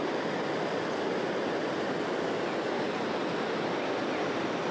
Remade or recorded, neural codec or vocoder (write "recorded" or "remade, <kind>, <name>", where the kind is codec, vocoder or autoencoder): recorded